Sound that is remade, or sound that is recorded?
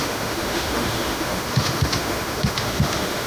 remade